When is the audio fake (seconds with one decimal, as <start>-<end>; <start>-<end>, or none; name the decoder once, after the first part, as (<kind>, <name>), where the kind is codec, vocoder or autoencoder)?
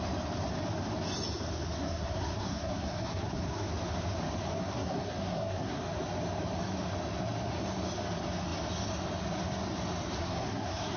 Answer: 1.8-3.7 (codec, SNAC); 4.6-5.8; 10.2-11.0